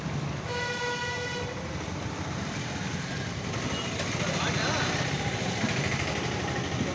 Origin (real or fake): real